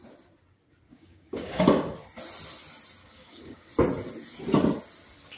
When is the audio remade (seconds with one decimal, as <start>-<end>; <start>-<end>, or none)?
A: 0.9-1.6; 3.0-3.7